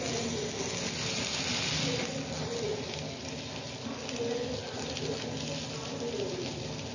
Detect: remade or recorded recorded